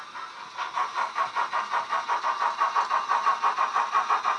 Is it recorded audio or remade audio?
recorded